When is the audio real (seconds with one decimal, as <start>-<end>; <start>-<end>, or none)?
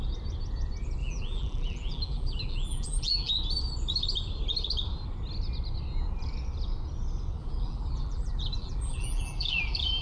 0.0-1.0; 3.3-7.4